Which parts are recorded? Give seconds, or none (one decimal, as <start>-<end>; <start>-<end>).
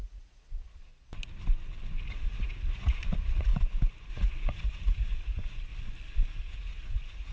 0.9-2.1; 3.5-4.1; 5.7-6.4